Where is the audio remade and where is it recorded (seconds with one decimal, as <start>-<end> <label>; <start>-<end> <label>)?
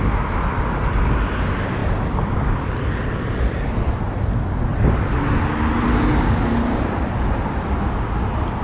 0.0-1.8 recorded; 1.8-3.9 remade; 3.9-4.7 recorded; 4.7-6.0 remade; 6.0-8.6 recorded